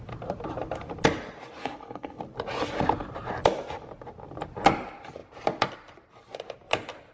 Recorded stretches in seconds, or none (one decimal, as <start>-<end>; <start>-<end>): 0.0-1.6; 2.2-7.1